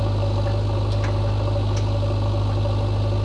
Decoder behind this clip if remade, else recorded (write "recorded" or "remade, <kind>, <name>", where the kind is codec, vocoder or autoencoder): recorded